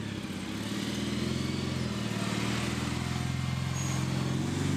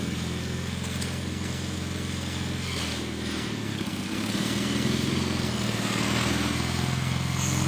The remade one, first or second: second